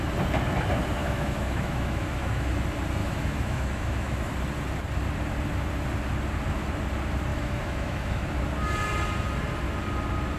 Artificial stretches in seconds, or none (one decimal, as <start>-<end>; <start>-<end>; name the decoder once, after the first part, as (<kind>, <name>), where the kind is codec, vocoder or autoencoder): 1.0-2.5 (autoencoder, DAC-VAE); 3.0-4.3; 7.3-8.3